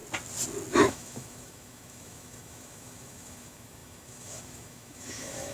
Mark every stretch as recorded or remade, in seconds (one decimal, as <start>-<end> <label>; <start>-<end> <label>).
0.0-0.7 recorded; 0.7-5.5 remade